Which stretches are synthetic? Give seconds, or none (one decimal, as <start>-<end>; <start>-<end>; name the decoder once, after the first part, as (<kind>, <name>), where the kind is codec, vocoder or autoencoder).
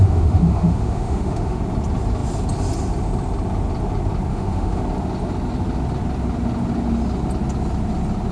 0.0-1.6 (autoencoder, DAC-VAE); 4.3-4.8